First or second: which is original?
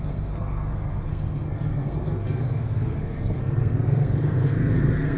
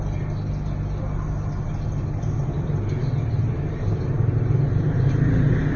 second